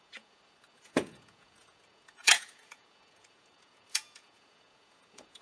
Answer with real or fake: fake